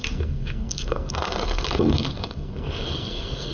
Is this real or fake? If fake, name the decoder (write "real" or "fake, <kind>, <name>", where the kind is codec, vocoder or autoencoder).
fake, codec, SNAC